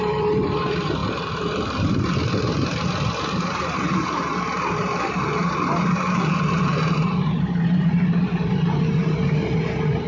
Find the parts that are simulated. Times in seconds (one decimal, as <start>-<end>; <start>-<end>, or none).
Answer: 0.0-1.0; 3.3-4.3; 5.1-10.1